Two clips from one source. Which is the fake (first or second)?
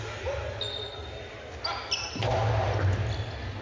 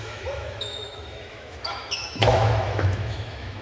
second